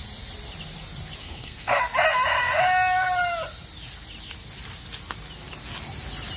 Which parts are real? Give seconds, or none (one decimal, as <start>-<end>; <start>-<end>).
0.0-1.2; 1.8-6.4